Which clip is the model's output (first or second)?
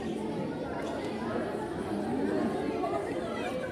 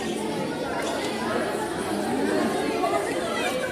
first